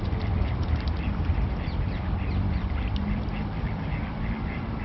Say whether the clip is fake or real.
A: fake